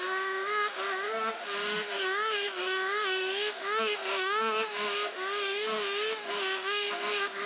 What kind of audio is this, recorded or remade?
remade